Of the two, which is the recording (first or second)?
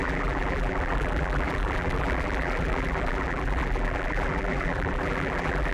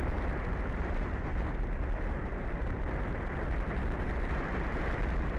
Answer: second